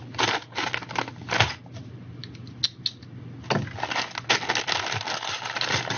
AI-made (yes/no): no